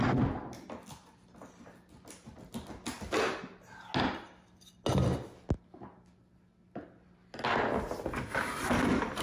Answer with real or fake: real